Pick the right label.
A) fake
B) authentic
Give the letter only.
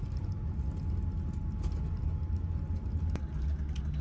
B